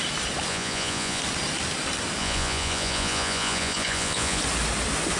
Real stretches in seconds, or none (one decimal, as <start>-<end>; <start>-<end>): 0.0-0.5; 1.2-2.2; 4.4-5.2